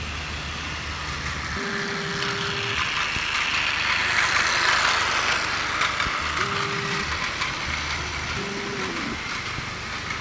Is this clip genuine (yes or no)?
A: yes